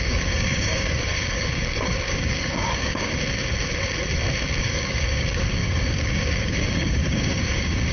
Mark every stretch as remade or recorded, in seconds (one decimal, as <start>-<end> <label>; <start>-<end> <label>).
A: 0.0-3.1 remade; 3.1-4.6 recorded; 4.6-7.9 remade